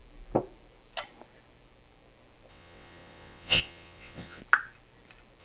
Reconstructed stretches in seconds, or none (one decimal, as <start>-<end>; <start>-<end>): 2.5-4.4